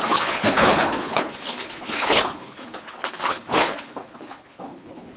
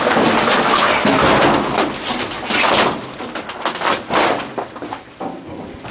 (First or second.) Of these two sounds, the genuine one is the second